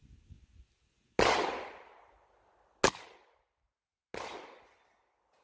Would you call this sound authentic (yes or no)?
yes